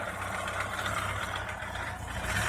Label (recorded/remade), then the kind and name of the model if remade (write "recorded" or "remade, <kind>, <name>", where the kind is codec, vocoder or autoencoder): recorded